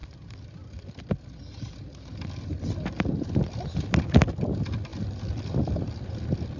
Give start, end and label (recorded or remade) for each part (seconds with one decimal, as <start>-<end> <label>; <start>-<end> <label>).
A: 0.0-4.9 recorded; 4.9-5.6 remade; 5.6-6.6 recorded